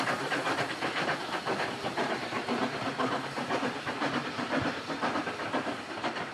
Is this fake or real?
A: fake